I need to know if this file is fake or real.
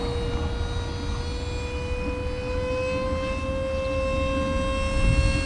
real